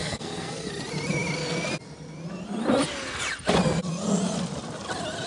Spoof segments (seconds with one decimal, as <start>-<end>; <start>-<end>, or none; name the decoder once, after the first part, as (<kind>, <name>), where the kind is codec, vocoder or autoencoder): 0.0-0.7 (codec, SNAC)